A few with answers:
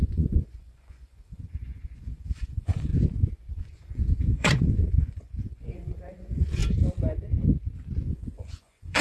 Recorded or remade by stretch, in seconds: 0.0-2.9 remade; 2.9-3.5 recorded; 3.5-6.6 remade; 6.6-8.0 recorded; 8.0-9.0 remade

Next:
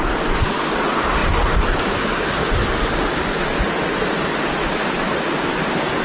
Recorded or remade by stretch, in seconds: 0.0-6.0 recorded